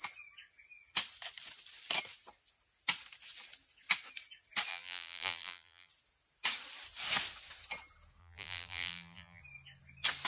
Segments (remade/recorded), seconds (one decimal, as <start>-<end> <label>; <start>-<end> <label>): 0.0-4.7 recorded; 4.7-5.9 remade; 5.9-8.2 recorded; 8.2-9.4 remade; 9.4-10.3 recorded